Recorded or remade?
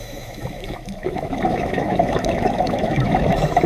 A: remade